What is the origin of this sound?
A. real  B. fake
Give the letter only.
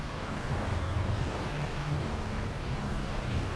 B